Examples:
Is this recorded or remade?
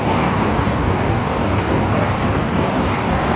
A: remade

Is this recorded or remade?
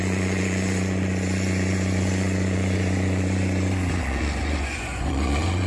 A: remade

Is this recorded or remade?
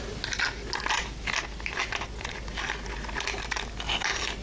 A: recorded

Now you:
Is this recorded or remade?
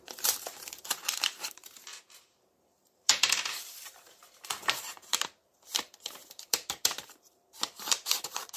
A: remade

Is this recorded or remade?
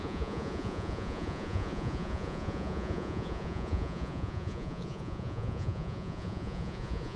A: remade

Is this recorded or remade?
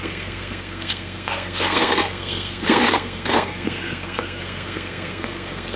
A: remade